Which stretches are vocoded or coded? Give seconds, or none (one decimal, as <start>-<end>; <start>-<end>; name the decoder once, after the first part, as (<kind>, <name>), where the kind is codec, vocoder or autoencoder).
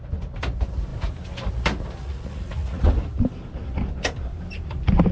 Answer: 2.0-2.8 (vocoder, Vocos)